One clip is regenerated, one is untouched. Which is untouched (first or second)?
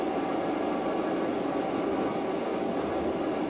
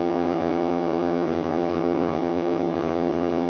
first